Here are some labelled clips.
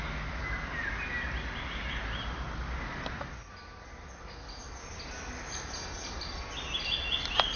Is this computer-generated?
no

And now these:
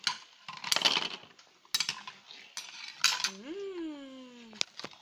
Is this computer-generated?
no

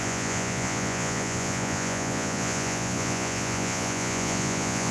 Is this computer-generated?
yes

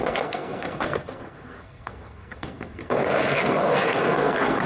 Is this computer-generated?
yes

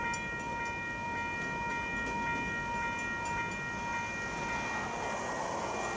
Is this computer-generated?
no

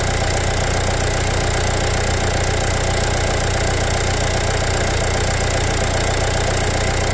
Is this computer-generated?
no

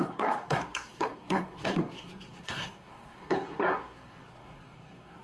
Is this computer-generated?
yes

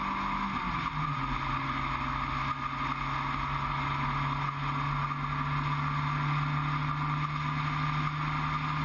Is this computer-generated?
no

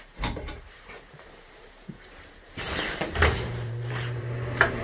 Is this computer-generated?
yes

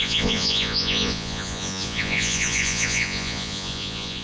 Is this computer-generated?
yes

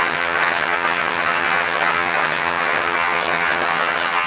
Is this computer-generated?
yes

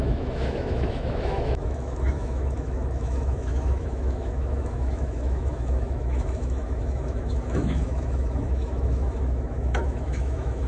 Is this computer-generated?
yes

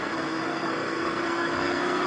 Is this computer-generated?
yes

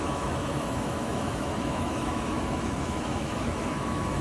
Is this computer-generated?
yes